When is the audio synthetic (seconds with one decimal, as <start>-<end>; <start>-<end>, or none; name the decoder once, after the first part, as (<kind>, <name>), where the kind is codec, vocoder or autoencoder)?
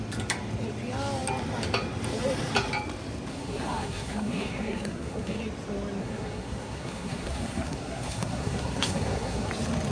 3.3-5.4 (codec, SNAC); 6.0-9.5